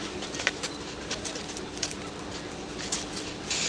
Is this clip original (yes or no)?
yes